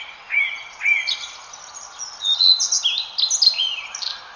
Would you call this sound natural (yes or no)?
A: yes